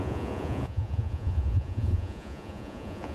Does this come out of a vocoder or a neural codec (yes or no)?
yes